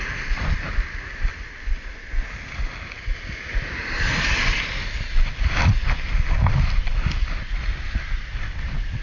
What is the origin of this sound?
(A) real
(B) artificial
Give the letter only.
A